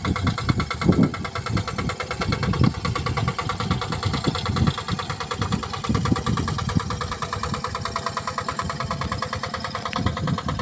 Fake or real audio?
real